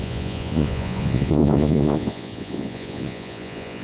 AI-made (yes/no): yes